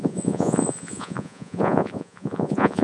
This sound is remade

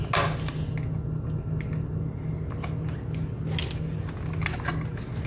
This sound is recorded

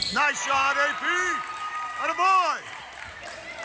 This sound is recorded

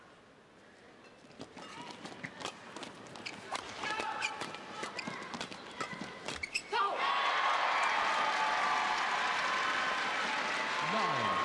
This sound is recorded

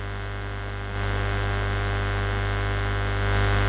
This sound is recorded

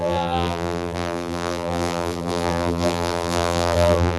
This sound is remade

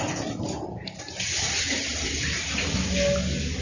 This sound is recorded